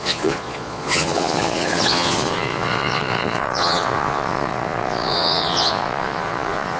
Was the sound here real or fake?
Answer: fake